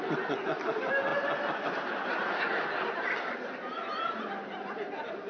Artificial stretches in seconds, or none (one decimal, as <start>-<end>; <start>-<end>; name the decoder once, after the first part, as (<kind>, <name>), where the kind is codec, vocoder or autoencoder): none